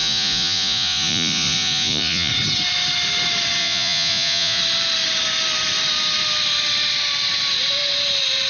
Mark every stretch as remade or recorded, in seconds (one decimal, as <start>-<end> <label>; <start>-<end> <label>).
0.0-2.3 remade; 2.3-3.6 recorded; 3.6-4.6 remade; 4.6-8.5 recorded